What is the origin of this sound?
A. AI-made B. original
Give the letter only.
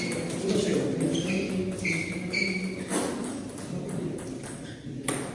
B